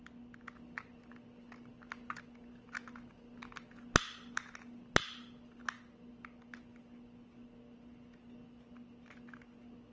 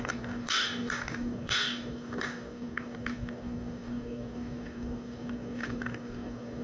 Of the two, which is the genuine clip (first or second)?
first